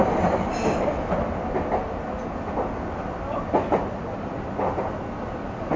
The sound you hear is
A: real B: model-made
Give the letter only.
A